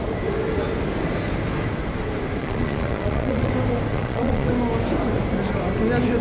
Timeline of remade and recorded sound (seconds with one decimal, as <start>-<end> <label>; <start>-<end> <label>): 0.0-2.4 recorded; 2.4-3.5 remade; 3.5-3.9 recorded; 3.9-4.5 remade; 4.5-6.2 recorded